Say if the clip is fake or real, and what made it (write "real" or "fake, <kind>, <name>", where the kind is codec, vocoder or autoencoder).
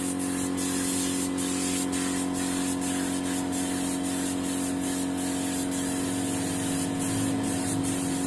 real